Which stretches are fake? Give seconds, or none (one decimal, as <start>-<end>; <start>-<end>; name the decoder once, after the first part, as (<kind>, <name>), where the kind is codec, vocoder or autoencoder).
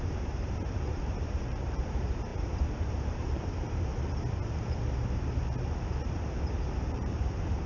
0.0-3.9 (vocoder, BigVGAN v2); 6.9-7.7